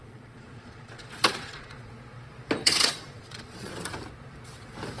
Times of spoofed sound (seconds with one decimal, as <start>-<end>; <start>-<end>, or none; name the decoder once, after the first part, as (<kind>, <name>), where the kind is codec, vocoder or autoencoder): 0.0-1.9 (vocoder, Vocos); 2.6-3.7